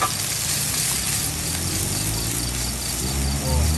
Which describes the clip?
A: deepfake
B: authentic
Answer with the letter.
B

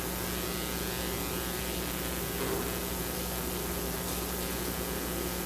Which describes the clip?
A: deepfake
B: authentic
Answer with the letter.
B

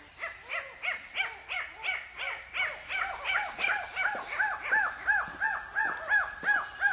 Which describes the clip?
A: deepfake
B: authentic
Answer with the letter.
B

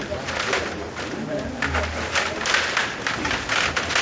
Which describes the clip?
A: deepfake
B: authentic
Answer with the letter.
B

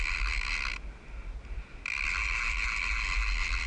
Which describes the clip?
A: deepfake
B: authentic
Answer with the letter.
B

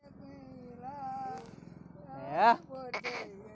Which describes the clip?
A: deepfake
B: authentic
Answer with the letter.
B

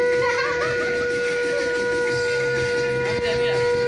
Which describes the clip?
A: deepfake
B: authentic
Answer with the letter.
B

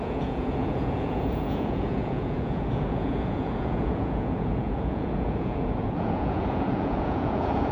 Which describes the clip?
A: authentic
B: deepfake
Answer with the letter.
B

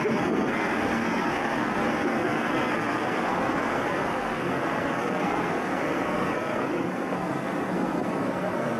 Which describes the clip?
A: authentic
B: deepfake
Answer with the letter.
B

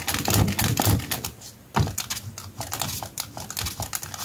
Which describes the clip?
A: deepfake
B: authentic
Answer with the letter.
B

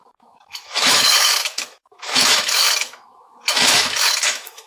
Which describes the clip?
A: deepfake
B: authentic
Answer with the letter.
A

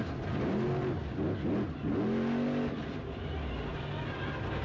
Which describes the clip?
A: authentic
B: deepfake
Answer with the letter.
A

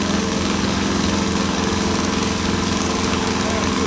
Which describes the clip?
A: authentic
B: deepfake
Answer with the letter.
B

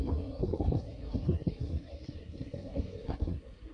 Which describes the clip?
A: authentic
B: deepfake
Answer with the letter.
B